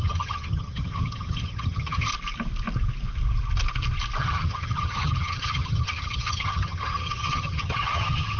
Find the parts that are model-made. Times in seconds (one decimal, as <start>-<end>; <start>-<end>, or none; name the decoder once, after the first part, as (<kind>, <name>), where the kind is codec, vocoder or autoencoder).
0.0-2.1 (vocoder, HiFi-GAN); 4.2-8.4